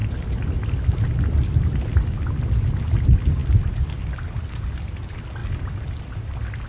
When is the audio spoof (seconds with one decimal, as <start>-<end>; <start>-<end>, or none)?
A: none